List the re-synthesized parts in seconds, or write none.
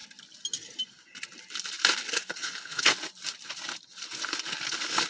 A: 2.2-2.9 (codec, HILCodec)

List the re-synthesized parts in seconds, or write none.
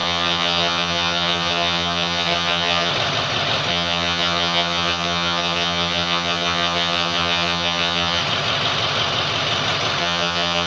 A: 0.0-2.9 (vocoder, HiFi-GAN); 3.7-8.2; 10.0-10.7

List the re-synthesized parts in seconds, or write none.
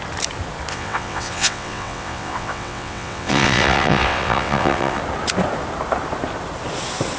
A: 0.7-5.0 (vocoder, WaveNeXt)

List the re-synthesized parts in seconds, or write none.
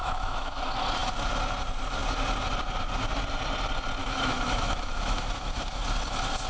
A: 0.0-0.6 (autoencoder, DAC-VAE); 4.0-5.8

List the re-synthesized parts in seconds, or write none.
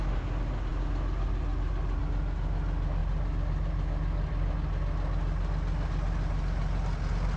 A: none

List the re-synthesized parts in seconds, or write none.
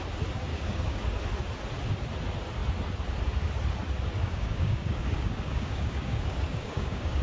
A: 0.5-1.2 (codec, DAC); 4.2-7.2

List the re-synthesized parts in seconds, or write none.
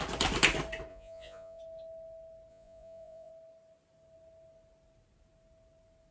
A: 0.9-1.6 (vocoder, Vocos); 2.5-3.3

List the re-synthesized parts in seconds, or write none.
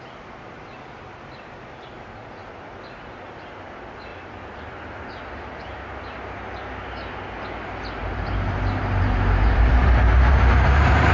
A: 8.0-11.1 (vocoder, BigVGAN v2)